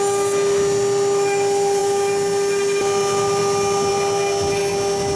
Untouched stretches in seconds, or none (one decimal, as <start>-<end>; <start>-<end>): 0.0-5.2